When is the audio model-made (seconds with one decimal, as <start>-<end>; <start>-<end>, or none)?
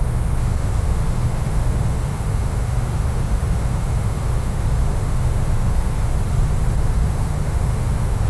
0.0-6.1; 6.8-8.3